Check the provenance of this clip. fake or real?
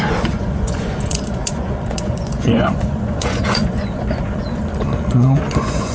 fake